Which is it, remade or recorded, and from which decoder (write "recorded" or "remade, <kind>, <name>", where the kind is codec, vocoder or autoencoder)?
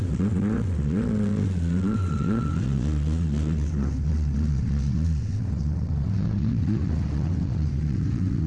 remade, vocoder, WaveNeXt